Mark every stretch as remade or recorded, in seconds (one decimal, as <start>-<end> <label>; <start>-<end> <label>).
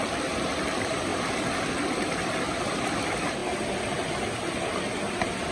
0.0-5.5 recorded